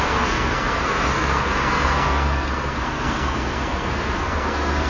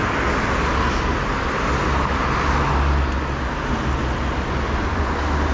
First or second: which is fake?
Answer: first